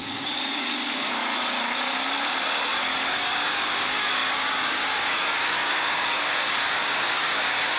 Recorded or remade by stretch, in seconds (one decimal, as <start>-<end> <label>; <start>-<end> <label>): 0.0-1.2 remade; 1.2-3.0 recorded; 3.0-7.8 remade

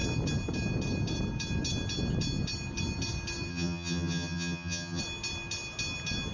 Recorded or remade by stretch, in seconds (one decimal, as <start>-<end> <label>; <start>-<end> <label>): 0.0-3.5 recorded; 3.5-5.0 remade; 5.0-6.3 recorded